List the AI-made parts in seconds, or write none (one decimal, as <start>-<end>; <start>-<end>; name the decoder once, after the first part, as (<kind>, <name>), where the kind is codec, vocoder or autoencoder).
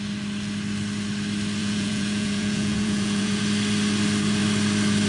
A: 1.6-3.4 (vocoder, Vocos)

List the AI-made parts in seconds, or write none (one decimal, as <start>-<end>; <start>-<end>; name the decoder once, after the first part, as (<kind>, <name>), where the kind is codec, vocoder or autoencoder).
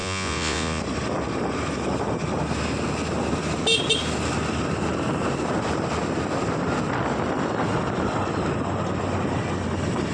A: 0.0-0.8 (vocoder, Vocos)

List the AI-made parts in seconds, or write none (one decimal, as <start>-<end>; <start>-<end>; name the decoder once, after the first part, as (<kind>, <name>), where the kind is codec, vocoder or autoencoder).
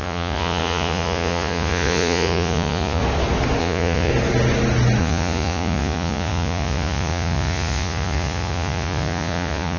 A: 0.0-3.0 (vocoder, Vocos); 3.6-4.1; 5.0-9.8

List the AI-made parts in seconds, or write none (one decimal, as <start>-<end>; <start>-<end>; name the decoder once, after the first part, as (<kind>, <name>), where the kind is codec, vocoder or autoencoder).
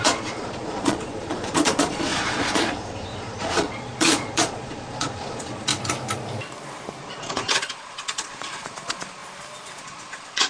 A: 0.0-5.7 (vocoder, Vocos); 7.0-9.2; 9.8-10.5